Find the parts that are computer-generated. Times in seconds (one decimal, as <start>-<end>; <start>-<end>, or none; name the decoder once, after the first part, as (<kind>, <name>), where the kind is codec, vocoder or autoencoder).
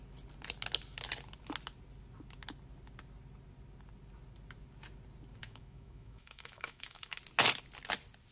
5.4-7.2 (autoencoder, DAC-VAE)